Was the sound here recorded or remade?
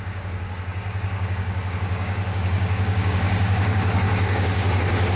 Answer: remade